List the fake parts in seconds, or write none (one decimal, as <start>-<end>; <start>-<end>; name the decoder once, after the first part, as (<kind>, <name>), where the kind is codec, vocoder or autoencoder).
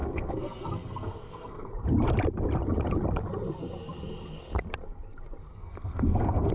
0.0-1.7 (codec, SNAC); 5.5-6.5